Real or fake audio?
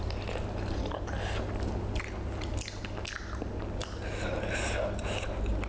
real